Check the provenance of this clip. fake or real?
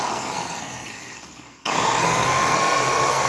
fake